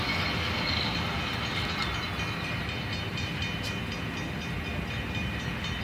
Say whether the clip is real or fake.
fake